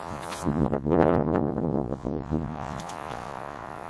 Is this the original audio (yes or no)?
no